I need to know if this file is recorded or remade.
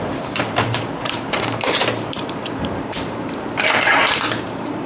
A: remade